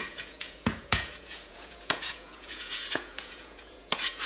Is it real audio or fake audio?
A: fake